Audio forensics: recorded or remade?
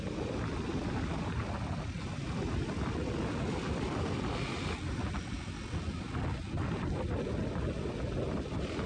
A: recorded